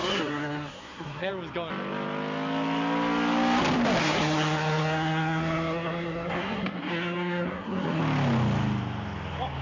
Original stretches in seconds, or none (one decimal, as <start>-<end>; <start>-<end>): 1.3-4.0; 8.0-9.6